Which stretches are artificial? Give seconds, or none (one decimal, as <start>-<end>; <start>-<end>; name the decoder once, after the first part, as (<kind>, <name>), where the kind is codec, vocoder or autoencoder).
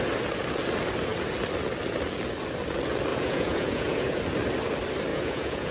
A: 3.1-4.2 (vocoder, Vocos); 5.1-5.7